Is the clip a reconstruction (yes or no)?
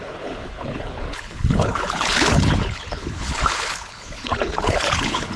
yes